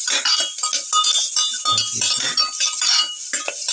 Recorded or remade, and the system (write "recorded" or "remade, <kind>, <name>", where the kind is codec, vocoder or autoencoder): recorded